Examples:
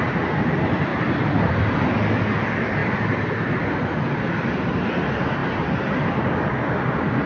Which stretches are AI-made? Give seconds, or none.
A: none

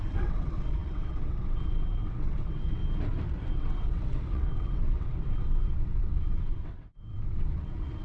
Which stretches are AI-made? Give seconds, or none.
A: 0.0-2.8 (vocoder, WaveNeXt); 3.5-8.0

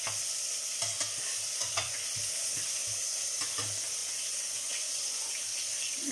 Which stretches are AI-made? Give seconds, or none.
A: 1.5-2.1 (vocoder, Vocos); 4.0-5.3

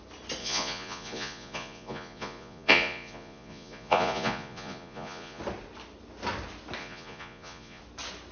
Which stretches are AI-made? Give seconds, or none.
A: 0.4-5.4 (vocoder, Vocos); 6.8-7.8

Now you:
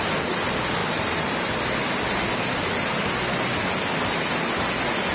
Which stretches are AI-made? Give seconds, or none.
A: none